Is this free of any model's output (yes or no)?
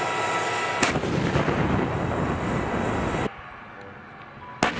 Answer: yes